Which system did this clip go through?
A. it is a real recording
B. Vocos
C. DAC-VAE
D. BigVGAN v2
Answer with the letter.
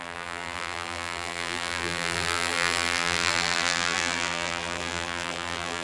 D